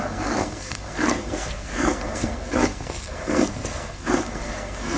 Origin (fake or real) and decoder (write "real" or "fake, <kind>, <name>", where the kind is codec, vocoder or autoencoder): fake, codec, SNAC